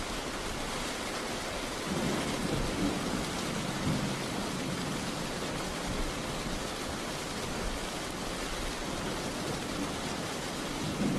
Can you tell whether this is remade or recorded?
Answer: recorded